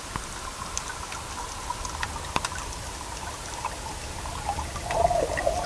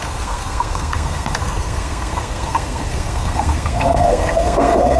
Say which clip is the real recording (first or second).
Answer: first